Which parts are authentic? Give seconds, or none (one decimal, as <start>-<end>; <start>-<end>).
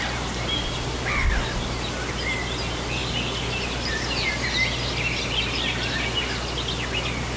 0.0-7.4